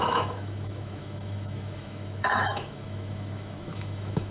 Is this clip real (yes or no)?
no